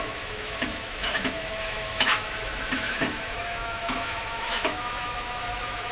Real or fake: fake